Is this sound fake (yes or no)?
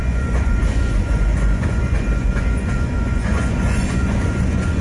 yes